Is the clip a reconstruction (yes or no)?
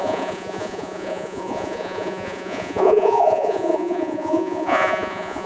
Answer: yes